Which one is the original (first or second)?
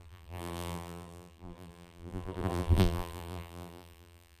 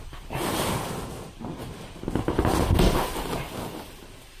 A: second